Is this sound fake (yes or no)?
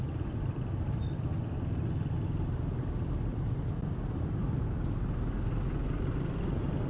no